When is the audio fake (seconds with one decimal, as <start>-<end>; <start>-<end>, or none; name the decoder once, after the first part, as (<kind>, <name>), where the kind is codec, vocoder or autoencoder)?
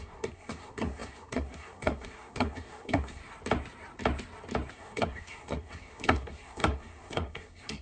0.0-3.2 (codec, SNAC); 4.7-7.8